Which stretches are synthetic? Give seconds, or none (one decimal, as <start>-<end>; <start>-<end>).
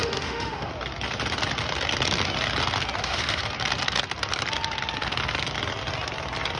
0.0-0.7; 3.0-3.4